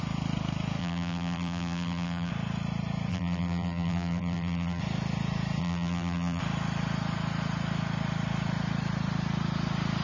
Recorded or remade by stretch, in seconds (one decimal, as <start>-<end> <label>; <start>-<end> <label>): 0.0-0.8 recorded; 0.8-2.3 remade; 2.3-3.1 recorded; 3.1-4.8 remade; 4.8-5.6 recorded; 5.6-6.4 remade; 6.4-10.0 recorded